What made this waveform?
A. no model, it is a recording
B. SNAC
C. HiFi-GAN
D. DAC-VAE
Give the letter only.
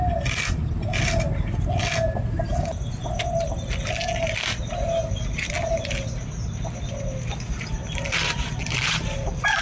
A